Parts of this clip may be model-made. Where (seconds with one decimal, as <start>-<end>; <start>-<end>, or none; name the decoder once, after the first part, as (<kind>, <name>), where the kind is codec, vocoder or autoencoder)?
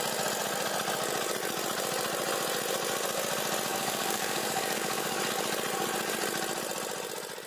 3.7-5.2 (codec, DAC)